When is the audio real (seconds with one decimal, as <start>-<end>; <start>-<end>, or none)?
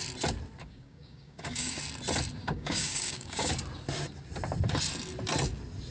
0.0-0.6; 1.8-2.4; 3.5-5.9